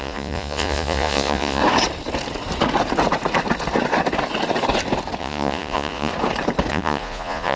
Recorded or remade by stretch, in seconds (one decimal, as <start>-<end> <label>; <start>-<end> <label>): 0.0-1.6 remade; 1.6-5.2 recorded; 5.2-6.1 remade; 6.1-6.7 recorded; 6.7-7.6 remade